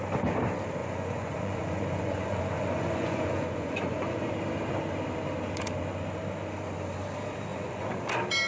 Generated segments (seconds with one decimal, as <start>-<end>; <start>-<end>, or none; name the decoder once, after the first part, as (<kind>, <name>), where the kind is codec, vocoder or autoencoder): 0.8-4.3 (vocoder, Vocos); 7.5-8.1